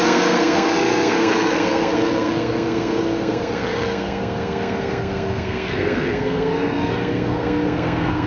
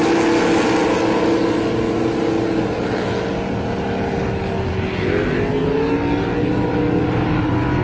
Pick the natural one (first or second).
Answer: second